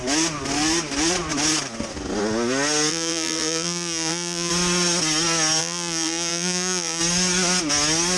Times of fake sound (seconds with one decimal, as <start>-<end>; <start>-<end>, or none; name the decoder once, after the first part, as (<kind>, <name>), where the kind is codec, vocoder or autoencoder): 2.9-4.5 (vocoder, BigVGAN v2); 5.6-7.0